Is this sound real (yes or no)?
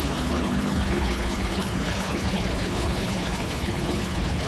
no